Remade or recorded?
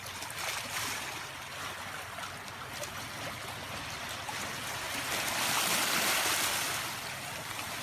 recorded